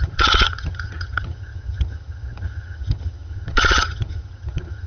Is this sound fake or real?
fake